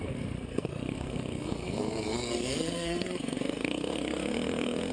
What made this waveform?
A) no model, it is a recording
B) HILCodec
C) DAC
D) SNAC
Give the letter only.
D